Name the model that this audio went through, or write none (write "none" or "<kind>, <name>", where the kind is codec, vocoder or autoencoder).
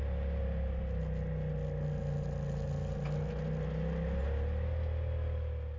none